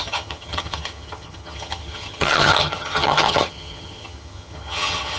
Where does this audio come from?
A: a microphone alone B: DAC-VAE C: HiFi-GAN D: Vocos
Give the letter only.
C